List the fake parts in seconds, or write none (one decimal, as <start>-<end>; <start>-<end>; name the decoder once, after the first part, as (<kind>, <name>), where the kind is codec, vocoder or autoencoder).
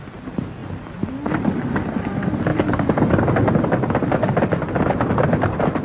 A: 0.6-1.1 (vocoder, BigVGAN v2); 4.0-4.7